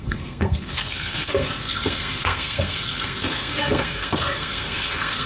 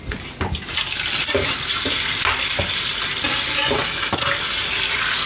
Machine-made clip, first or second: first